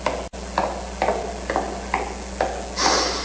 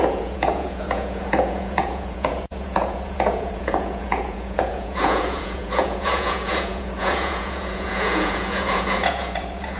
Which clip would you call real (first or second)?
first